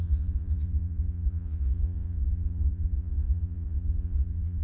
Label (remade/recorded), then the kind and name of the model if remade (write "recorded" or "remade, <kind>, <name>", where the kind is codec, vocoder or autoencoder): remade, vocoder, Vocos